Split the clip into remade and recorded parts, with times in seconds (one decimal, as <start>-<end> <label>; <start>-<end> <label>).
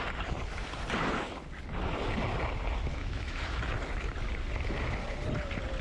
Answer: 0.0-2.9 recorded; 2.9-3.4 remade; 3.4-5.8 recorded